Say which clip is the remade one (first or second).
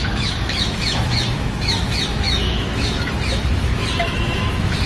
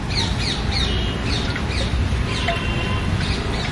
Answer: first